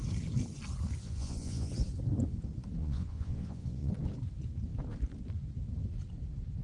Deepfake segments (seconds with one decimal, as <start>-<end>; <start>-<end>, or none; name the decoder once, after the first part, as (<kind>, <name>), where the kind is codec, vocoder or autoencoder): 1.0-1.7 (vocoder, Vocos); 2.8-3.9